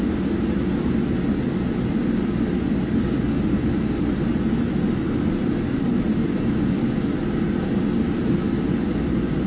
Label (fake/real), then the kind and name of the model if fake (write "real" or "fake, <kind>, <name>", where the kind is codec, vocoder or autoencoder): real